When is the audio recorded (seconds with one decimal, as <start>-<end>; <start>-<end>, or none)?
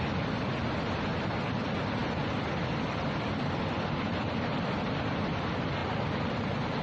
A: 0.0-6.8